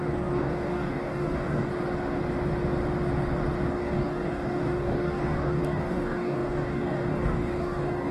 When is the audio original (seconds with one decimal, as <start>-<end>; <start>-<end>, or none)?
1.7-3.7